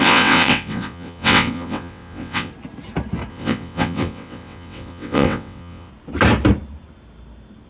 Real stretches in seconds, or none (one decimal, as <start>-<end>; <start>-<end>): 2.5-3.3; 5.9-7.7